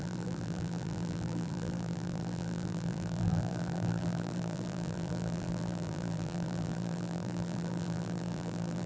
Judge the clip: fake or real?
fake